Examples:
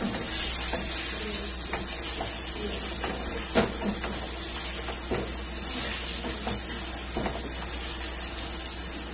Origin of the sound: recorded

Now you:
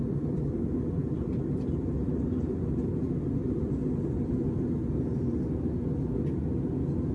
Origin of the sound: recorded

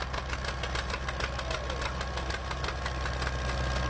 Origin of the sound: recorded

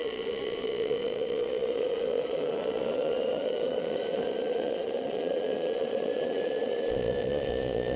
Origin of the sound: remade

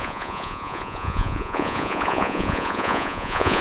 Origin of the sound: remade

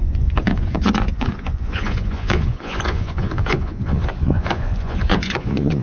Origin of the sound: remade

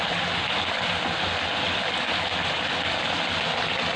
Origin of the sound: recorded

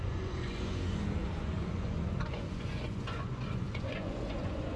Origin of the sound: remade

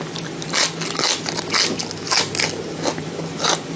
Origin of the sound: recorded